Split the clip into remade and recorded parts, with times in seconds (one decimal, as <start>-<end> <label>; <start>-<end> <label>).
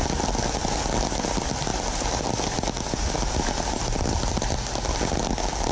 0.0-5.7 recorded